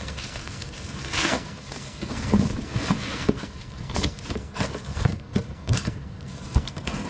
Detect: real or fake fake